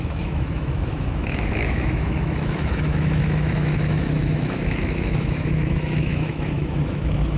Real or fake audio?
fake